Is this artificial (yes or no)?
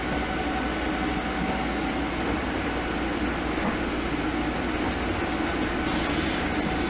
no